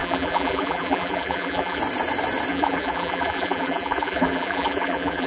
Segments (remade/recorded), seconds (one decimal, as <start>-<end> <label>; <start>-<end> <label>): 0.0-1.8 remade; 1.8-2.5 recorded; 2.5-5.3 remade